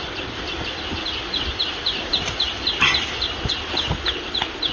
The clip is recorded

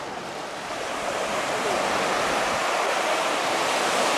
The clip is recorded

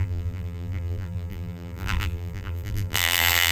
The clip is remade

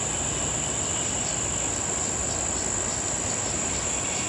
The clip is recorded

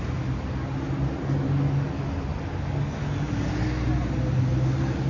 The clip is recorded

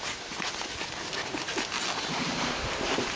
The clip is recorded